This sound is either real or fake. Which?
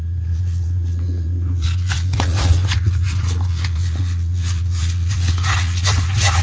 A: fake